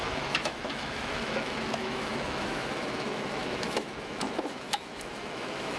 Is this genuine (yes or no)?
no